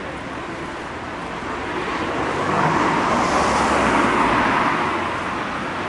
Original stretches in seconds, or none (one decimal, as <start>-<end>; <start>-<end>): 0.0-5.9